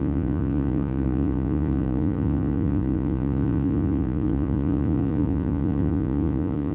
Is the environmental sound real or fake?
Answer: fake